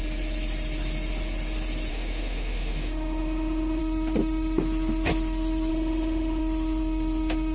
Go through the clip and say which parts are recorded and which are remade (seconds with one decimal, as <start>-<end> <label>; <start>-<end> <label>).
0.0-1.9 recorded; 1.9-3.8 remade; 3.8-5.7 recorded; 5.7-6.4 remade; 6.4-7.5 recorded